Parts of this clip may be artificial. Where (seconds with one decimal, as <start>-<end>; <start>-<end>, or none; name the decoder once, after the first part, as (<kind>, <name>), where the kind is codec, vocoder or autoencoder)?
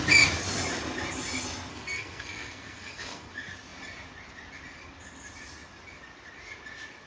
1.7-3.3 (codec, SNAC)